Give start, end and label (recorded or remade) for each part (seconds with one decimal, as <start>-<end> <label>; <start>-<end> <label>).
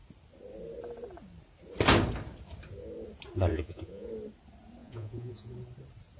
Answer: 0.0-3.5 recorded; 3.5-4.1 remade; 4.1-4.8 recorded; 4.8-5.5 remade; 5.5-6.2 recorded